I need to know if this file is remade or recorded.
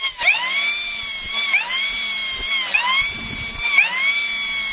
remade